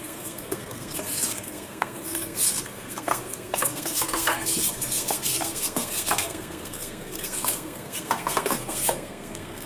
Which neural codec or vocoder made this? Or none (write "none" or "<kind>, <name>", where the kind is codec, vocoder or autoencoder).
codec, SNAC